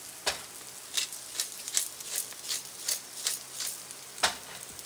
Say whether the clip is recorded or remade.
recorded